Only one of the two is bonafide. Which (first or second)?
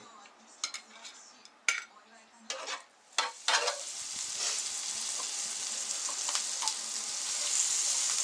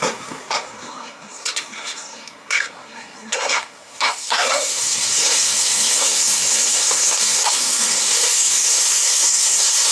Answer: first